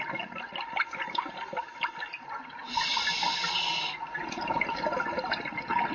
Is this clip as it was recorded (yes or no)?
yes